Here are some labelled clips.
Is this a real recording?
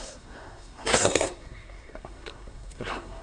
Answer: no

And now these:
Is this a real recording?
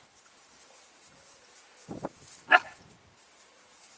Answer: yes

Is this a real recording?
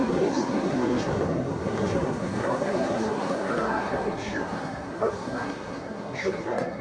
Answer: no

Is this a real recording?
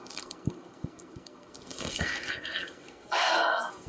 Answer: no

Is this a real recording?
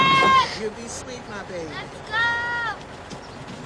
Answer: yes